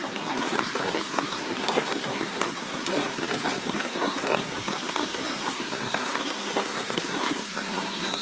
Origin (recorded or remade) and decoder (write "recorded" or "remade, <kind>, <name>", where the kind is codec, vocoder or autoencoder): remade, codec, SNAC